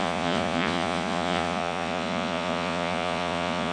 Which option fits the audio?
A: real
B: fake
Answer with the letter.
B